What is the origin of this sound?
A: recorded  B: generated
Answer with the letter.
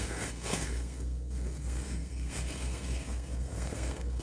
B